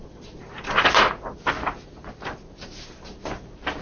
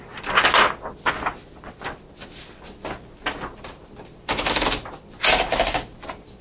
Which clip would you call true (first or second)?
second